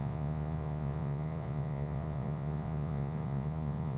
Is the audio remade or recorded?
remade